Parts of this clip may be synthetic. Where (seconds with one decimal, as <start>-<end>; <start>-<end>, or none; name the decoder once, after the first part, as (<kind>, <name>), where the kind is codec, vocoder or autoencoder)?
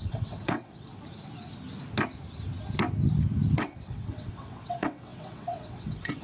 0.0-0.9 (vocoder, WaveNeXt); 3.5-6.2